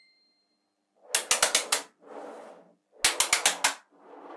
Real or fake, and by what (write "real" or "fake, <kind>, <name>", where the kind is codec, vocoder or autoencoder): real